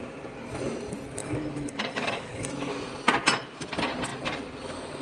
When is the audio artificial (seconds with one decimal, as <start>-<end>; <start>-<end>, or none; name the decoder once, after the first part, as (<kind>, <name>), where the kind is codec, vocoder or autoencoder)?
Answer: 1.2-2.5 (codec, DAC)